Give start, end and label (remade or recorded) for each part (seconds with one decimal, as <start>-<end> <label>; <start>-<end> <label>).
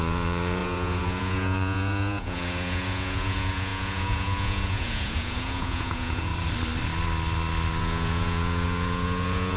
0.0-6.3 remade; 6.3-7.8 recorded; 7.8-9.6 remade